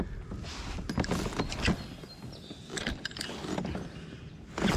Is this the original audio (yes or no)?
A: yes